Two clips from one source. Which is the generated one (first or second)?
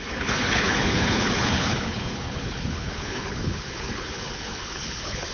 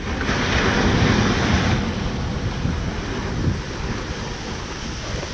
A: first